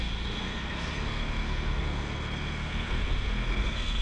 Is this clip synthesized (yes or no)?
yes